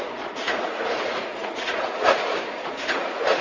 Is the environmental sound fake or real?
fake